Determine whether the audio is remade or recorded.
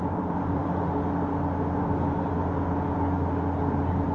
recorded